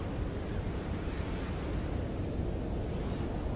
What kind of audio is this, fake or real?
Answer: real